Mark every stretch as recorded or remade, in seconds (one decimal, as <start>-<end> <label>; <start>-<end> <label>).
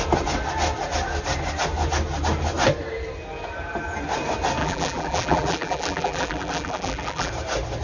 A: 0.0-4.6 recorded; 4.6-7.3 remade; 7.3-7.8 recorded